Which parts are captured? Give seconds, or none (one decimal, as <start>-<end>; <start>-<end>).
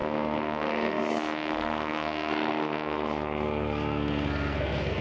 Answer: none